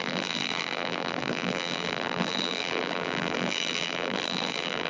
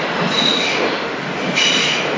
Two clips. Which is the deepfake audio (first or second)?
first